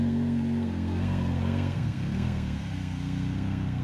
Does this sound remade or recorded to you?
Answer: remade